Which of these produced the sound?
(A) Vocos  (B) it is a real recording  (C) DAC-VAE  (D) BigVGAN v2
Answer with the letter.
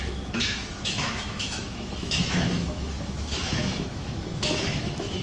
C